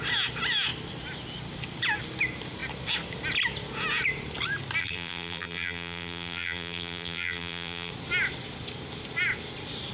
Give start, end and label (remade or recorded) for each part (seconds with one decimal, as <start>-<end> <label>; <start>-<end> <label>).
0.0-4.8 recorded; 4.8-7.9 remade; 7.9-9.9 recorded